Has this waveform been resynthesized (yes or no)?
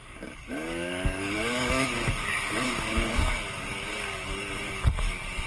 yes